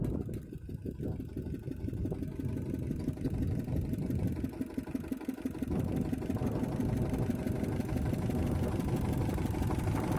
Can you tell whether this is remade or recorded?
recorded